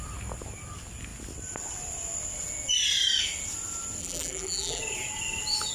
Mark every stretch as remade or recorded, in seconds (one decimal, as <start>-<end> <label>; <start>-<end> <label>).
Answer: 0.0-4.0 recorded; 4.0-4.8 remade; 4.8-5.7 recorded